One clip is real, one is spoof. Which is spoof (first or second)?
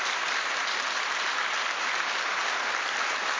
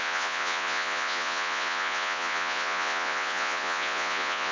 second